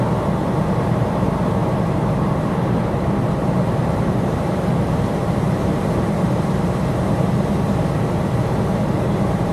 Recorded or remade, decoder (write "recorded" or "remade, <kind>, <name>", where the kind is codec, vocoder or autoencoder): remade, vocoder, BigVGAN v2